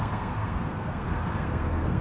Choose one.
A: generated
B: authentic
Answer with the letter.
A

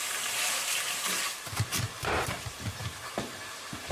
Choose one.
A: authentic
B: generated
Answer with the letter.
B